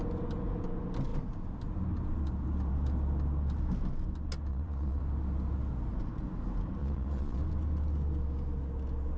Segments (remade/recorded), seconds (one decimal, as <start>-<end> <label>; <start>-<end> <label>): 0.0-4.5 recorded; 4.5-5.0 remade; 5.0-6.8 recorded; 6.8-7.4 remade; 7.4-9.2 recorded